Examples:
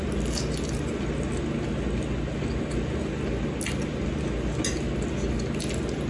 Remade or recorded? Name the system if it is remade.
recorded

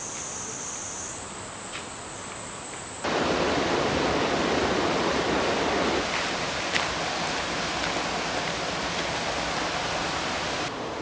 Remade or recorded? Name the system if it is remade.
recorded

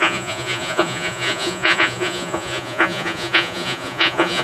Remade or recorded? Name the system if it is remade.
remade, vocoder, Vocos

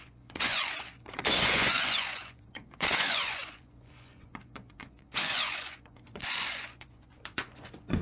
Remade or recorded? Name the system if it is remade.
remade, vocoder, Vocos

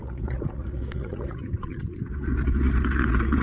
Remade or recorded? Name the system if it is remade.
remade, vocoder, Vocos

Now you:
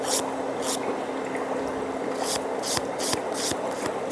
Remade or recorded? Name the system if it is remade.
recorded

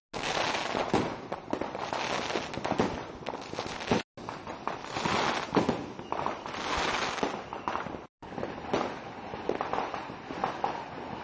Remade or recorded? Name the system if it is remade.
recorded